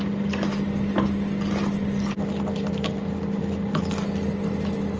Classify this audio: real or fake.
real